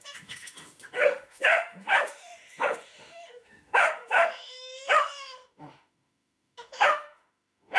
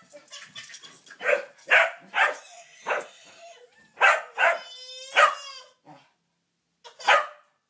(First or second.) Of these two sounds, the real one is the second